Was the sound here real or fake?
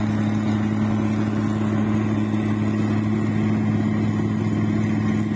real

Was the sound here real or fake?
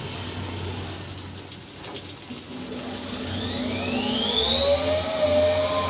real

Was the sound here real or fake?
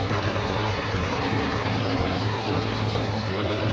fake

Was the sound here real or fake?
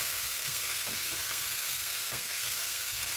fake